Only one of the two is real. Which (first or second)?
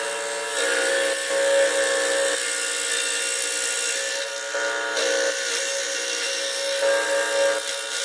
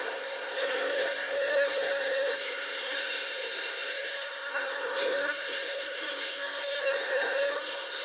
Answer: first